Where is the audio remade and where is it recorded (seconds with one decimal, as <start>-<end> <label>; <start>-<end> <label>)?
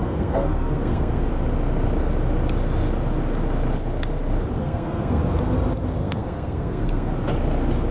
0.0-1.3 remade; 1.3-4.6 recorded; 4.6-5.2 remade; 5.2-6.0 recorded; 6.0-7.1 remade; 7.1-7.9 recorded